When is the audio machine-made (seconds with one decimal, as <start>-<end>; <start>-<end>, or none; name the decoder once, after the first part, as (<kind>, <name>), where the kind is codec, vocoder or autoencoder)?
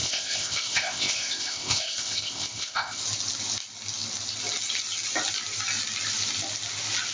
0.0-3.0 (codec, ZipCodec)